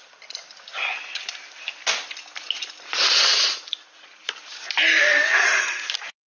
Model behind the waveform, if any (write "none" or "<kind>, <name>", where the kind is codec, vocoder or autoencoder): none